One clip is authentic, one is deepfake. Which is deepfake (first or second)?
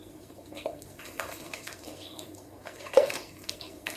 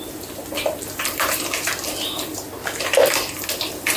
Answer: first